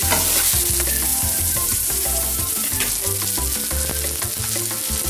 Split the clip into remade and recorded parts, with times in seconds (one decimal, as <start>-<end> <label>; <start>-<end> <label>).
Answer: 0.0-1.1 recorded; 1.1-2.9 remade; 2.9-5.1 recorded

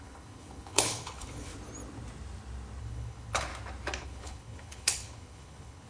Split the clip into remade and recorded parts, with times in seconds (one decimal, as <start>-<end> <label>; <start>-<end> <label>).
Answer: 0.0-1.5 remade; 1.5-2.8 recorded; 2.8-3.5 remade; 3.5-4.0 recorded; 4.0-5.9 remade

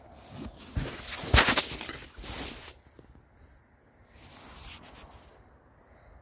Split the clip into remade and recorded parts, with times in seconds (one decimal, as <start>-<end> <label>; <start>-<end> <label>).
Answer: 0.0-6.2 recorded

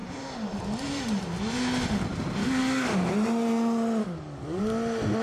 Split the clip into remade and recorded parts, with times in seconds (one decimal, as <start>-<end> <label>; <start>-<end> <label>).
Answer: 0.0-2.4 recorded; 2.4-3.1 remade; 3.1-4.0 recorded; 4.0-4.6 remade; 4.6-5.2 recorded

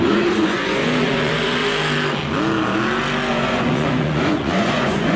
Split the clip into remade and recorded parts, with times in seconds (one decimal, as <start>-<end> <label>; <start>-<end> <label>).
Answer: 0.0-1.6 remade; 1.6-3.3 recorded; 3.3-5.2 remade